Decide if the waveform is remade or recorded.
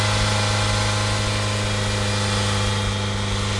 recorded